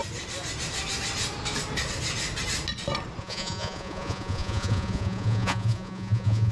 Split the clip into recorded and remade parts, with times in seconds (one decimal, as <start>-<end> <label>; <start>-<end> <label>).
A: 0.0-3.2 recorded; 3.2-6.5 remade